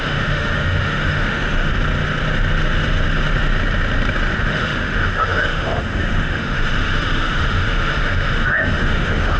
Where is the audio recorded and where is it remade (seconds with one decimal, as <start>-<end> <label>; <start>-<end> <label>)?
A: 0.0-1.7 remade; 1.7-4.4 recorded; 4.4-9.4 remade